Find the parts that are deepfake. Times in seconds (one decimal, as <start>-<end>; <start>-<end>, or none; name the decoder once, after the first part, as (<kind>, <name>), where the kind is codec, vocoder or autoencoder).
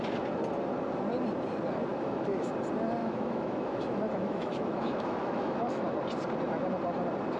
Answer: 1.9-2.5 (autoencoder, DAC-VAE); 3.0-5.9